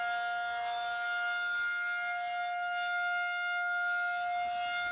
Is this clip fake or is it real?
real